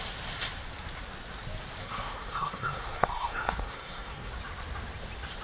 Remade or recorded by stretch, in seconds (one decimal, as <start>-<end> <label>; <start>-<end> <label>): 0.0-1.8 recorded; 1.8-4.3 remade; 4.3-5.4 recorded